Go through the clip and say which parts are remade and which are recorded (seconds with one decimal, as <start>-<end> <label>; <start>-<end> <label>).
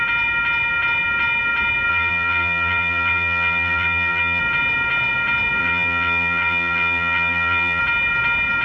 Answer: 0.0-1.9 recorded; 1.9-4.4 remade; 4.4-5.6 recorded; 5.6-7.8 remade; 7.8-8.6 recorded